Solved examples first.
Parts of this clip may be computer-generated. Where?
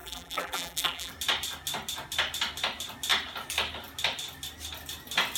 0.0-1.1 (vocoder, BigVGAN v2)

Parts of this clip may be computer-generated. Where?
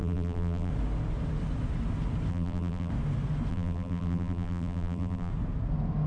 0.0-0.7 (vocoder, BigVGAN v2); 2.3-2.9; 3.5-5.3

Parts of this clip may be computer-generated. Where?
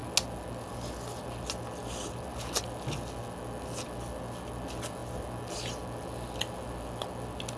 none